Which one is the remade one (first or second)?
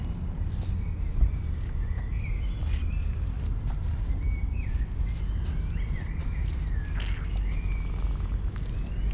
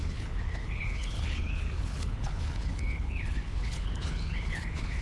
second